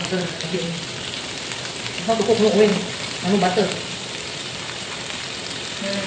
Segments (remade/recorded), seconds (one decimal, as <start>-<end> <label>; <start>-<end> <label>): 0.0-1.0 remade; 1.0-2.7 recorded; 2.7-5.2 remade; 5.2-6.1 recorded